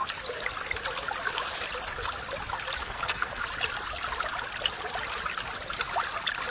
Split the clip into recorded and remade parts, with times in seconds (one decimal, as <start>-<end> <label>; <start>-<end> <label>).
0.0-2.8 recorded; 2.8-3.4 remade; 3.4-6.5 recorded